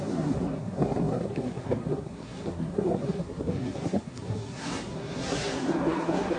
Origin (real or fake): fake